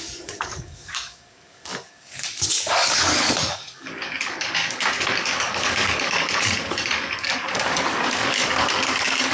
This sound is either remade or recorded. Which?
remade